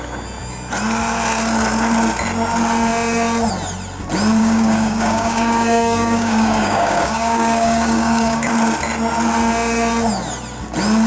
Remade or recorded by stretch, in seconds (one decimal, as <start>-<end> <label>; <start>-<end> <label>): 0.0-4.4 recorded; 4.4-8.5 remade; 8.5-11.1 recorded